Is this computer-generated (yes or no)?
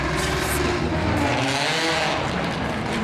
no